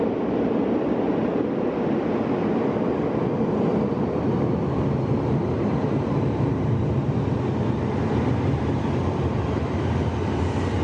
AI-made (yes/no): no